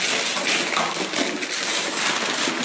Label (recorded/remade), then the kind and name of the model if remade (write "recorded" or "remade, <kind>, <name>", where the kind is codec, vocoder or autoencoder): recorded